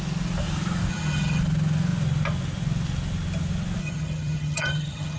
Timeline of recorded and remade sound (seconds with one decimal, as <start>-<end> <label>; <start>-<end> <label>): 0.0-0.9 recorded; 0.9-1.4 remade; 1.4-3.8 recorded; 3.8-5.2 remade